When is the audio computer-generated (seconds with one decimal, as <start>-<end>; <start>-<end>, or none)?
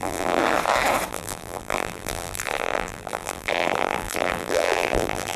0.0-0.4; 1.1-5.4